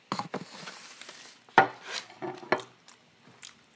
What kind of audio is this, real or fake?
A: real